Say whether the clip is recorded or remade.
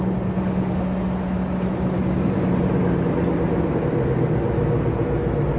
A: recorded